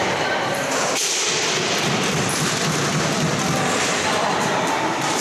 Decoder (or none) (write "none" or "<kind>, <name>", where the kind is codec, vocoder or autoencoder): vocoder, BigVGAN v2